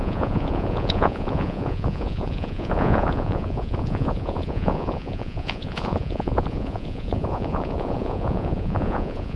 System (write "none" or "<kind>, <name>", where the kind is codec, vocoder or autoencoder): vocoder, Vocos